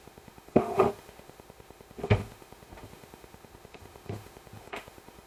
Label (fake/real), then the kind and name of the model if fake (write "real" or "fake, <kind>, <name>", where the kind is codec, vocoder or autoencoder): fake, autoencoder, DAC-VAE